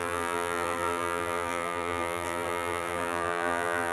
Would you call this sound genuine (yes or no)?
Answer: no